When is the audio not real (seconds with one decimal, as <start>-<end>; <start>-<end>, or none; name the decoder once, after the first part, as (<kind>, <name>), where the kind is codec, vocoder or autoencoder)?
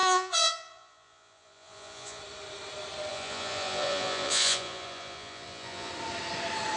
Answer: 0.0-2.2 (vocoder, Vocos); 3.1-5.9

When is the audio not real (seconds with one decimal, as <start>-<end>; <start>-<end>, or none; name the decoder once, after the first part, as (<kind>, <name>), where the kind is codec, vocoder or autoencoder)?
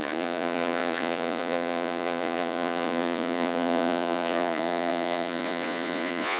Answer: 0.0-6.4 (vocoder, Vocos)